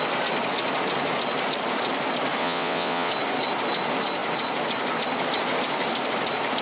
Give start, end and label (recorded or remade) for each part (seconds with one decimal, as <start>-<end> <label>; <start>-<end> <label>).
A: 0.0-2.4 recorded; 2.4-3.1 remade; 3.1-6.6 recorded

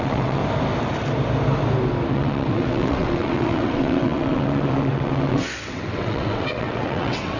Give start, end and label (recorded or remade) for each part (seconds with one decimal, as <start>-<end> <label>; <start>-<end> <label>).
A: 0.0-0.4 remade; 0.4-2.1 recorded; 2.1-7.4 remade

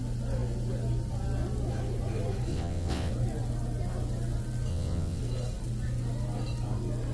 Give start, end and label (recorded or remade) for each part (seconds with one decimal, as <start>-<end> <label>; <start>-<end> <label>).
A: 0.0-2.5 recorded; 2.5-3.1 remade; 3.1-4.7 recorded; 4.7-5.2 remade; 5.2-7.1 recorded

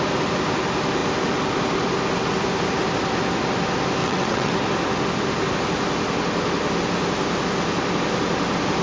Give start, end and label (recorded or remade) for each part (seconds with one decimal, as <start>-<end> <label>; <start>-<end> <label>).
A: 0.0-4.0 recorded; 4.0-4.5 remade; 4.5-8.8 recorded

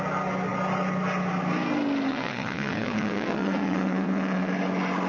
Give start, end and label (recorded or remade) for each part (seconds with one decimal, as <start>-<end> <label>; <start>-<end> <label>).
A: 0.0-2.1 recorded; 2.1-4.5 remade; 4.5-5.1 recorded

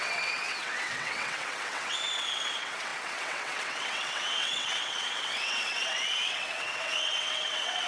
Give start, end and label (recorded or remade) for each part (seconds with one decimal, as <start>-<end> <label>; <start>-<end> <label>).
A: 0.0-7.9 remade

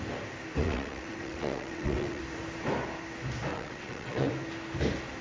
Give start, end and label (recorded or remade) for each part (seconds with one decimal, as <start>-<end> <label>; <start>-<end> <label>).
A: 0.0-0.6 recorded; 0.6-2.2 remade; 2.2-3.5 recorded; 3.5-4.3 remade; 4.3-5.2 recorded